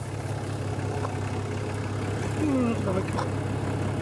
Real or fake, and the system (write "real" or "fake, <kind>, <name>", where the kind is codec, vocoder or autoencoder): real